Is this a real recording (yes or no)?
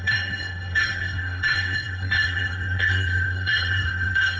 no